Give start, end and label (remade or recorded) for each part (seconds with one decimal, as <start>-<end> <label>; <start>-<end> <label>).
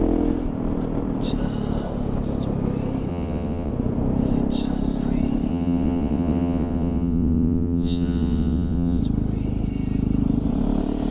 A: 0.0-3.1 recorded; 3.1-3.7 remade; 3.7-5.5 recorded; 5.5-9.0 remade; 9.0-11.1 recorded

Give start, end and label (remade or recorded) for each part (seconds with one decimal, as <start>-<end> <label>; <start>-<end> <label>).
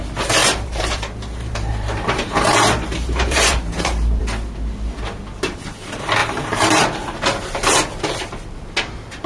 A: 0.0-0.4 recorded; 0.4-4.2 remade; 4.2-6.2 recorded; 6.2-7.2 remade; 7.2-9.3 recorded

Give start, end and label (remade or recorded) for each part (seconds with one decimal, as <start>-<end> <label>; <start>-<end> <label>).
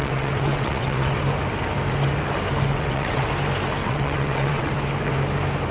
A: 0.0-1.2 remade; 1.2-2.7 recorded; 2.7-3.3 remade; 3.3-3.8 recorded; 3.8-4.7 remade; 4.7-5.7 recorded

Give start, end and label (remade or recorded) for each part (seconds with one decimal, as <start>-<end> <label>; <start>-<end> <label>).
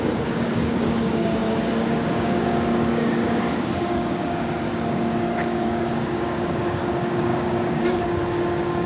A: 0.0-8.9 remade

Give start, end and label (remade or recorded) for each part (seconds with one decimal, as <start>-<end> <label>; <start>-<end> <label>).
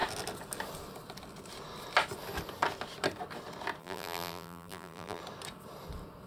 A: 0.0-3.8 recorded; 3.8-5.2 remade; 5.2-6.3 recorded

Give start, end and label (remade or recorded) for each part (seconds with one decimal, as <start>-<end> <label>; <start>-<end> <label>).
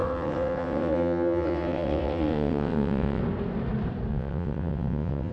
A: 0.0-3.2 remade; 3.2-4.1 recorded; 4.1-5.3 remade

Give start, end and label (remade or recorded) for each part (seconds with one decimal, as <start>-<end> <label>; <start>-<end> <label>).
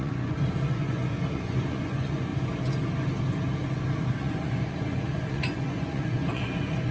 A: 0.0-2.3 remade; 2.3-4.1 recorded; 4.1-6.9 remade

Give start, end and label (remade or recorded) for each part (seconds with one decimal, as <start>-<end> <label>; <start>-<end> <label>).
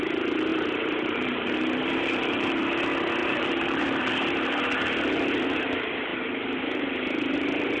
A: 0.0-0.5 recorded; 0.5-2.6 remade; 2.6-3.2 recorded; 3.2-4.1 remade; 4.1-7.8 recorded